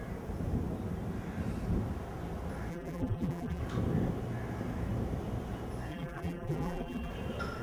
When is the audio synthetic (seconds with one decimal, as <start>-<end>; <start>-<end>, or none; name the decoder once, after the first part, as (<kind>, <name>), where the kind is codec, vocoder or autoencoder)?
2.7-3.6 (vocoder, BigVGAN v2); 5.9-7.1